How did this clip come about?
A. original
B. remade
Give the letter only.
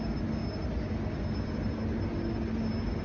A